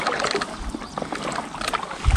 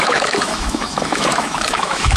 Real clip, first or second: first